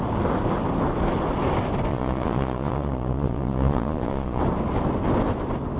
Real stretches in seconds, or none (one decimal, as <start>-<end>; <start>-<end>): 0.0-1.9; 4.4-5.8